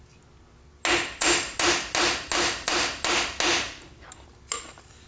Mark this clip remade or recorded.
recorded